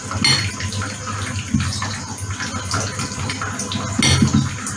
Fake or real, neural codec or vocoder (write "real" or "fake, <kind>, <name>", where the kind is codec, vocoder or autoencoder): real